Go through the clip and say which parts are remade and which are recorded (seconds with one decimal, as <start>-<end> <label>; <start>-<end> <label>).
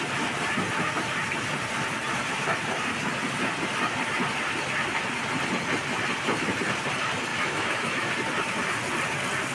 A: 0.0-7.3 recorded; 7.3-8.1 remade; 8.1-9.5 recorded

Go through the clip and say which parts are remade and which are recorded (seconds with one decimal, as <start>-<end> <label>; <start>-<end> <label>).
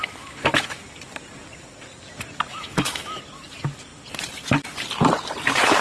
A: 0.0-0.8 remade; 0.8-2.5 recorded; 2.5-3.2 remade; 3.2-5.8 recorded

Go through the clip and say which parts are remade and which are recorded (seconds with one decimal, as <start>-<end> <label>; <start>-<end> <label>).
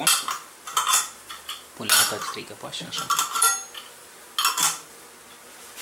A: 0.0-5.8 recorded